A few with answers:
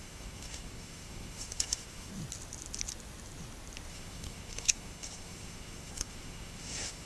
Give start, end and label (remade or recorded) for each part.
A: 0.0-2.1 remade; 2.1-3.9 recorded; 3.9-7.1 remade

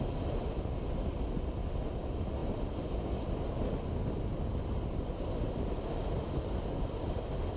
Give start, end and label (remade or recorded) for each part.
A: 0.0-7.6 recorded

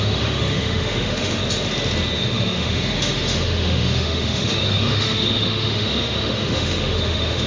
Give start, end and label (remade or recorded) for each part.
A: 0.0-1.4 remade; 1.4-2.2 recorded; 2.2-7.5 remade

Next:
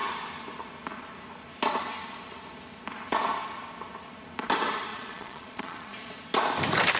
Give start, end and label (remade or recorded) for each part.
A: 0.0-4.9 recorded; 4.9-6.2 remade; 6.2-7.0 recorded

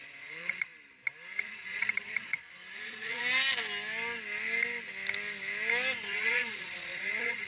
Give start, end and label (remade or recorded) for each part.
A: 0.0-0.7 remade; 0.7-1.4 recorded; 1.4-3.2 remade; 3.2-6.1 recorded; 6.1-7.5 remade